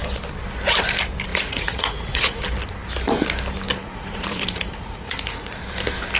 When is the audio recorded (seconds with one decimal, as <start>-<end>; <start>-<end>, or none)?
0.0-1.3; 2.4-3.8; 5.6-6.2

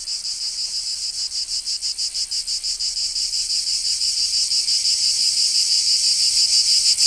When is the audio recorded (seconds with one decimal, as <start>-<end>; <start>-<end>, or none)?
0.0-3.1; 4.2-5.0; 5.8-7.1